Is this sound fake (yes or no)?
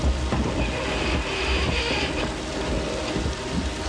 no